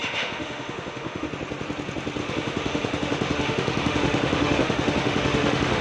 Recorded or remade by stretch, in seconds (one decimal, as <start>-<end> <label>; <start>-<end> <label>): 0.0-1.3 remade; 1.3-2.2 recorded; 2.2-5.8 remade